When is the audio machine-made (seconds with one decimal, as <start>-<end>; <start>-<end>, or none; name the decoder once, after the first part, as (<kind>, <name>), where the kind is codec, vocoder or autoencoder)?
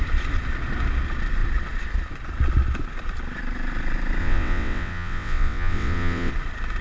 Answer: 4.2-6.3 (vocoder, WaveNeXt)